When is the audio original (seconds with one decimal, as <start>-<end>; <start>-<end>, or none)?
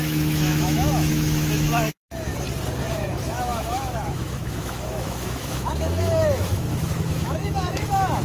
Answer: 2.3-2.9